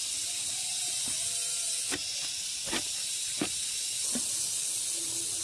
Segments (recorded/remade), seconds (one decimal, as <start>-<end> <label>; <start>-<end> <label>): 0.0-5.4 recorded